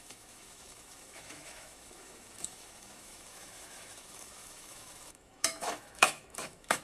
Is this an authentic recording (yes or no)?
no